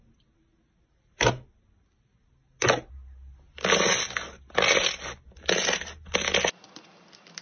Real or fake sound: real